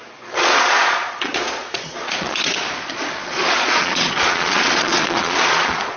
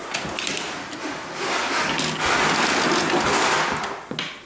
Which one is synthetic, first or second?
first